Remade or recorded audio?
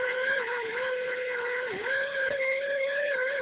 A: remade